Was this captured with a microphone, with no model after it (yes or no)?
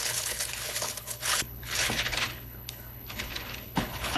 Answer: no